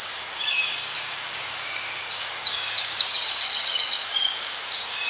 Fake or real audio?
fake